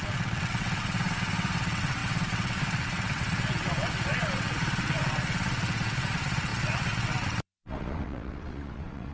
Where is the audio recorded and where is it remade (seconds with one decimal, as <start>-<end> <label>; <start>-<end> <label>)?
0.0-9.1 remade

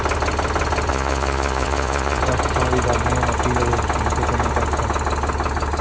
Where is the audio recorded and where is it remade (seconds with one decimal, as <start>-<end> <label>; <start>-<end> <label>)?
0.0-0.9 recorded; 0.9-2.2 remade; 2.2-5.8 recorded

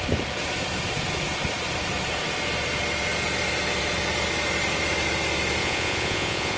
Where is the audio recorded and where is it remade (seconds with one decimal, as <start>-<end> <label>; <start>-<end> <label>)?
0.0-5.6 recorded; 5.6-6.6 remade

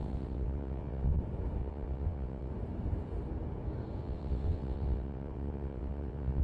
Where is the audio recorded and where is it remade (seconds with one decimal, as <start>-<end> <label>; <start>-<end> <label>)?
0.0-1.2 remade; 1.2-1.6 recorded; 1.6-2.5 remade; 2.5-4.0 recorded; 4.0-6.4 remade

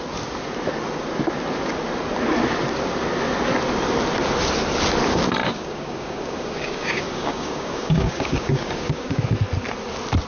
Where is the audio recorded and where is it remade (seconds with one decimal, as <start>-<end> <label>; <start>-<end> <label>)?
0.0-5.4 recorded; 5.4-9.2 remade; 9.2-10.3 recorded

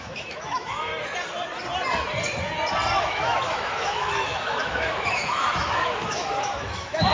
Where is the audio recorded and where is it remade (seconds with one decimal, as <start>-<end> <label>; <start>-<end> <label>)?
0.0-0.9 remade; 0.9-3.0 recorded; 3.0-7.1 remade

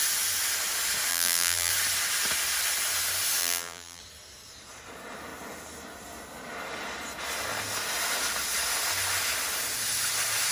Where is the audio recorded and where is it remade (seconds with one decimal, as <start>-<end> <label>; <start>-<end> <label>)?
0.0-1.1 recorded; 1.1-1.7 remade; 1.7-3.4 recorded; 3.4-4.0 remade; 4.0-10.5 recorded